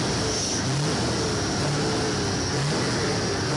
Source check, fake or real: real